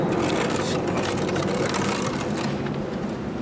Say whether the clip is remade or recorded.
recorded